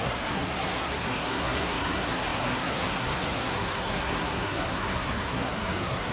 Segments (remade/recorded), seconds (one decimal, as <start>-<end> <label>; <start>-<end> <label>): 0.0-6.1 remade